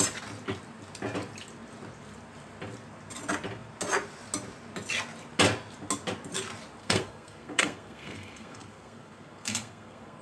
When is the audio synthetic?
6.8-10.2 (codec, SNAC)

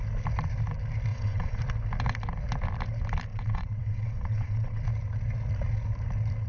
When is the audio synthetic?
1.1-1.6 (vocoder, WaveNeXt); 3.3-4.8